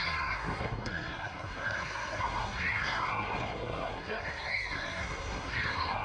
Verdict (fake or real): fake